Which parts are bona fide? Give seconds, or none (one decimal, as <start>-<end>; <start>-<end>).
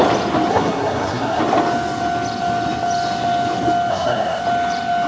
0.0-0.5; 1.4-3.9; 4.4-5.1